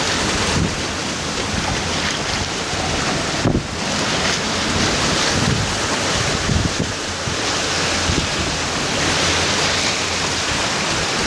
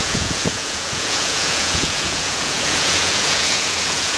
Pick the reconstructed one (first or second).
second